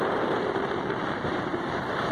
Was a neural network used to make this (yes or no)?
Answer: yes